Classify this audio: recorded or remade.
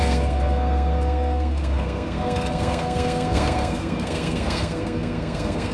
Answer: remade